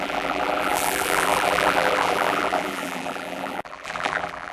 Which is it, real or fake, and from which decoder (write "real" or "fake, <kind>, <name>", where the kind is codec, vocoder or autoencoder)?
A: fake, vocoder, BigVGAN v2